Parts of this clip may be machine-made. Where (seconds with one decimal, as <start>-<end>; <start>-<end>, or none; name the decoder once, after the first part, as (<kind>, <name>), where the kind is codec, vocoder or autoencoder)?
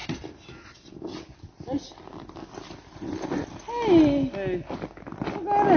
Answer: none